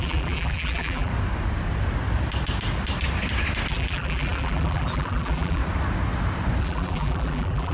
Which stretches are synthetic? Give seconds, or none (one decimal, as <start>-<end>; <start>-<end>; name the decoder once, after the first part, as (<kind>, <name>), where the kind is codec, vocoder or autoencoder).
0.0-1.1 (vocoder, BigVGAN v2); 3.7-5.6; 6.6-7.7